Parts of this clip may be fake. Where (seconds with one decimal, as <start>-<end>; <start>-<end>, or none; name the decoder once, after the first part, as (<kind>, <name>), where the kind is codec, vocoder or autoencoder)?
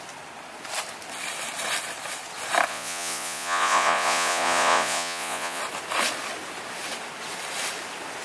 2.7-5.6 (vocoder, Vocos)